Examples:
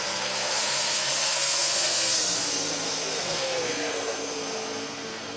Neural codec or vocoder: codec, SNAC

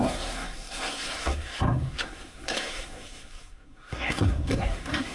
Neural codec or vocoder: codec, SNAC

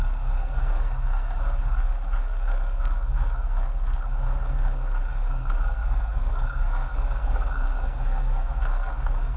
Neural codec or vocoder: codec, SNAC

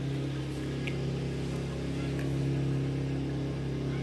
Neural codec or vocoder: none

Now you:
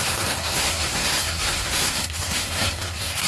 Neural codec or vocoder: codec, SNAC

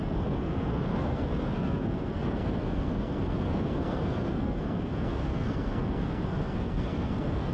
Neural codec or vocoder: codec, SNAC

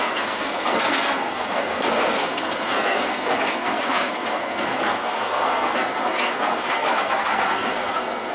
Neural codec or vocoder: codec, SNAC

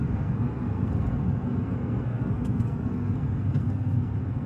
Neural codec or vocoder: codec, SNAC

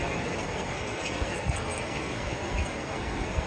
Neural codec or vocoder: codec, SNAC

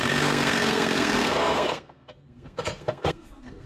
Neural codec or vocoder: codec, SNAC